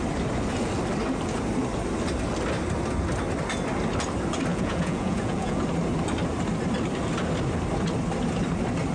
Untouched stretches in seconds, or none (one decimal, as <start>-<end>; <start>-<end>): 0.0-4.5; 5.6-8.9